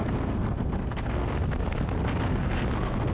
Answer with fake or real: fake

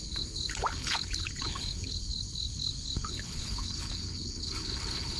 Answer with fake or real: fake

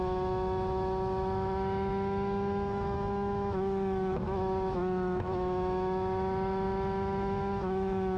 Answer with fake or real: fake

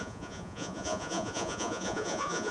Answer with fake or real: fake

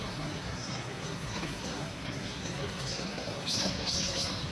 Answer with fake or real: fake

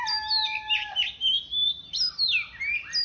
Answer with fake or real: real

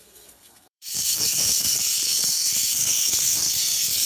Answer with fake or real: fake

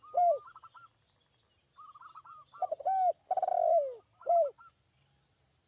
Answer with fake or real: real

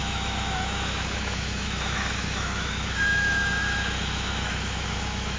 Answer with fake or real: fake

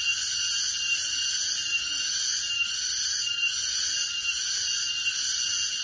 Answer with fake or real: real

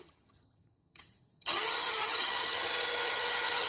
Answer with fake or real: fake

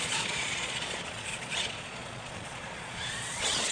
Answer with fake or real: fake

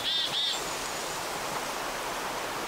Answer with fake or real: real